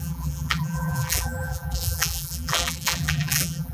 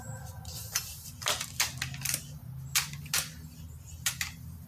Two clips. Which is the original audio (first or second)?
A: second